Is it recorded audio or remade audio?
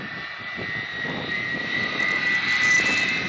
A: recorded